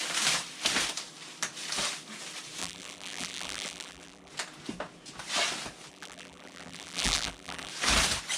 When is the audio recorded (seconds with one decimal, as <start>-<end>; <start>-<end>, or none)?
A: 0.0-2.6; 4.3-5.9; 7.7-8.4